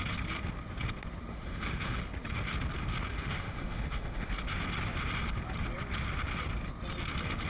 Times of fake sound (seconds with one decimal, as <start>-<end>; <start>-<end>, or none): 1.3-2.0; 3.1-4.3